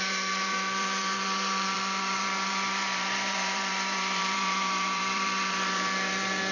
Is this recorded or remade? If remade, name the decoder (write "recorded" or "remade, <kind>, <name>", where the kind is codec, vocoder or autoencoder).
remade, vocoder, BigVGAN v2